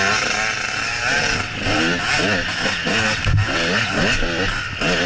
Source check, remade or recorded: recorded